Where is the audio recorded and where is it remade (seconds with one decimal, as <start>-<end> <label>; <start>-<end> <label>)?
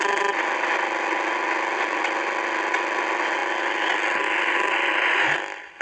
0.0-5.8 recorded